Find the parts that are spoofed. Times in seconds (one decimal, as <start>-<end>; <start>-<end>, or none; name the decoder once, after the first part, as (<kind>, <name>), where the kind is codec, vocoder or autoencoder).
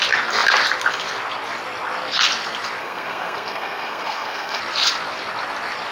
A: 2.8-4.6 (codec, SNAC)